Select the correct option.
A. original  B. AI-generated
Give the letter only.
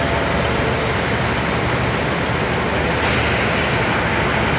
A